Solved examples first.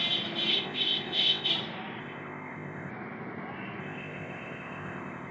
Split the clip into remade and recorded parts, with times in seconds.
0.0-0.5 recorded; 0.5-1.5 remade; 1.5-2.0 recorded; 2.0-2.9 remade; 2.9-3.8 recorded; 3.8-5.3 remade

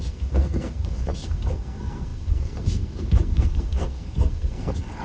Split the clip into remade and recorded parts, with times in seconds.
0.0-5.0 remade

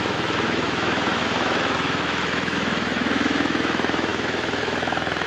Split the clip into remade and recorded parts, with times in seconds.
0.0-5.3 remade